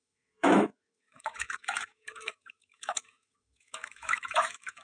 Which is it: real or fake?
fake